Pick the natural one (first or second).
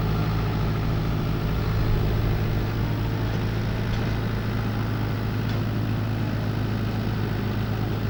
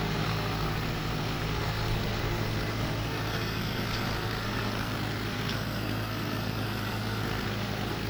first